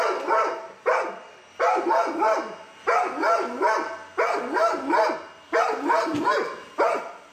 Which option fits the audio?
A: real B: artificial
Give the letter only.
A